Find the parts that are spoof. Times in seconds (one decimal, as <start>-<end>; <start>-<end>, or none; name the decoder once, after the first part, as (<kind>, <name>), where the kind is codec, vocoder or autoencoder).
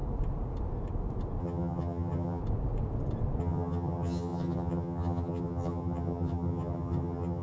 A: 1.4-2.4 (vocoder, HiFi-GAN); 3.4-7.4